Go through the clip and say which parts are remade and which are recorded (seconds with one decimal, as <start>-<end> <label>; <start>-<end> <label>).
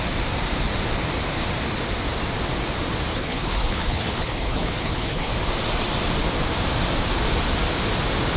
0.0-3.1 recorded; 3.1-5.3 remade; 5.3-8.4 recorded